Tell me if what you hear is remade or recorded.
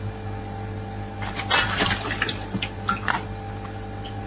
recorded